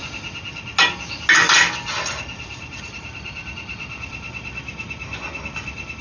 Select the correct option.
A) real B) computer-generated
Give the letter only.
A